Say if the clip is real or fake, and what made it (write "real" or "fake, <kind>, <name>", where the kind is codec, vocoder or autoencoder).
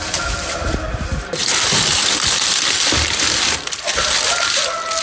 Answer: real